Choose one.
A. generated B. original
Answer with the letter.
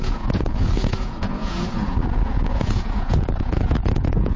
A